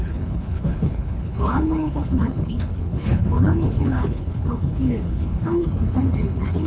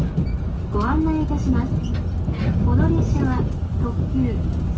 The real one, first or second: second